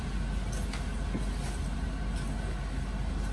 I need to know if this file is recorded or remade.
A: recorded